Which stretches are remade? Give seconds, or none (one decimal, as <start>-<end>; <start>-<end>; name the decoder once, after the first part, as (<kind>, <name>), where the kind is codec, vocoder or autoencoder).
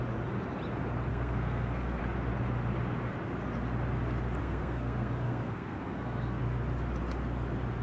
1.1-2.0 (codec, SNAC); 4.4-6.4